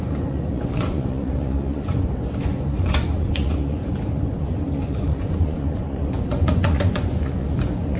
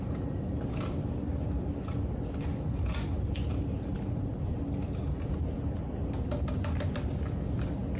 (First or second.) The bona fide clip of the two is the second